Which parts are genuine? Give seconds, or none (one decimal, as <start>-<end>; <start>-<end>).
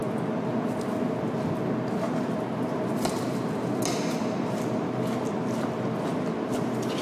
0.0-7.0